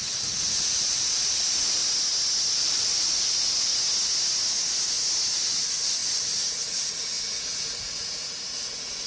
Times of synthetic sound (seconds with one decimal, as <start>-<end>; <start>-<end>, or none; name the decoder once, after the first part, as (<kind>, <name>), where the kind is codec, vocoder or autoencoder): 0.0-1.8 (vocoder, Vocos); 2.5-3.7; 5.3-9.1